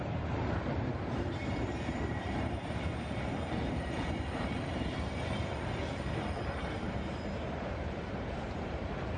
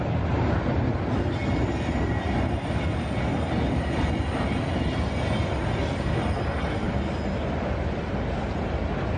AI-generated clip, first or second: first